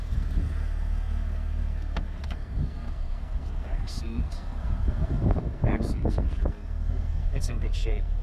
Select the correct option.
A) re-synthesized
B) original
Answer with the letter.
A